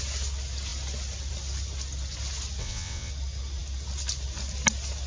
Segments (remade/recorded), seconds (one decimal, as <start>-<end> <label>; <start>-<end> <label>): 0.0-2.6 recorded; 2.6-3.1 remade; 3.1-5.1 recorded